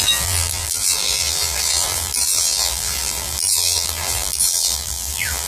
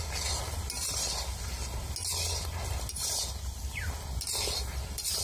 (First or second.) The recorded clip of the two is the second